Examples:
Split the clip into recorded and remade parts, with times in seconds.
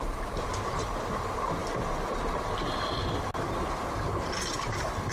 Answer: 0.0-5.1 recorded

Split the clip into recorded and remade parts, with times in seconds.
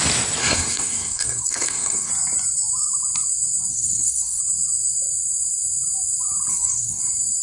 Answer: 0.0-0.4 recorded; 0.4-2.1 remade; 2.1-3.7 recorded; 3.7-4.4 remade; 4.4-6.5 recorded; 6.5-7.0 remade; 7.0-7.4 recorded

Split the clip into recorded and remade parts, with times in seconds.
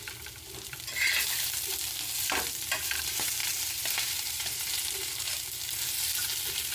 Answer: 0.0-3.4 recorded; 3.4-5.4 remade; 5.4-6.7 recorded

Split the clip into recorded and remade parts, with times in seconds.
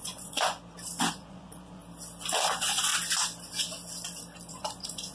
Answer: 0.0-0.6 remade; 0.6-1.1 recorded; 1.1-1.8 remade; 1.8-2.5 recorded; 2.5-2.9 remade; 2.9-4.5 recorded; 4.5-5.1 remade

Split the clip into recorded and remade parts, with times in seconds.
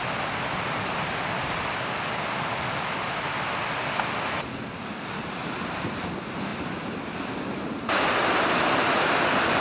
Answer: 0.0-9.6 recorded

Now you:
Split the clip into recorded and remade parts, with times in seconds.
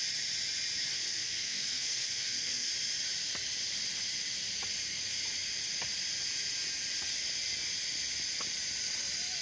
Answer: 0.0-0.9 recorded; 0.9-2.7 remade; 2.7-9.4 recorded